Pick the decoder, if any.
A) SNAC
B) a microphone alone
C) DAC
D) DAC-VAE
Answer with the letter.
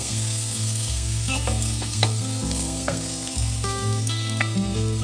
A